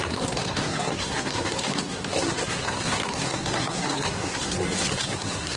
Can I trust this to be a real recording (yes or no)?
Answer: no